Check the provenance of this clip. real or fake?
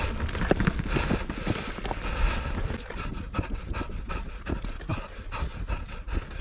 real